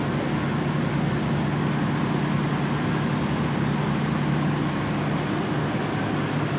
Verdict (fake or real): real